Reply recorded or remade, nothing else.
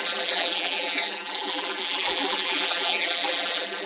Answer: remade